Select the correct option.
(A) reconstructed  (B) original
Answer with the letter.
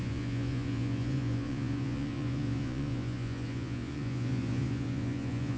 A